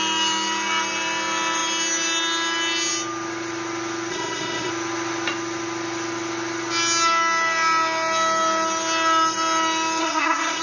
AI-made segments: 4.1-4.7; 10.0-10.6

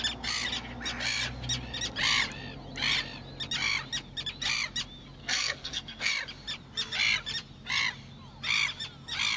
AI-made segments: 5.2-6.1

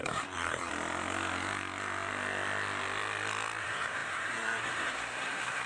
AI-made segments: 0.0-0.7; 3.6-5.7

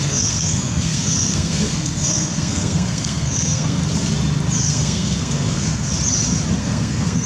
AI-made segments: 0.0-3.8; 4.6-5.9; 6.6-7.3